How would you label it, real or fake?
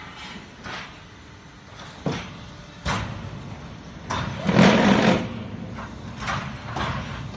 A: real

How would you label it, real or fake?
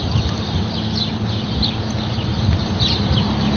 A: real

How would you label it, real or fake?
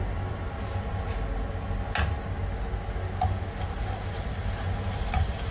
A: real